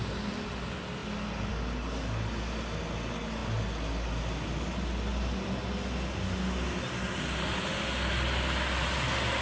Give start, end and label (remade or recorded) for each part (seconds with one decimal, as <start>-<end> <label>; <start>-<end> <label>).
0.0-9.4 recorded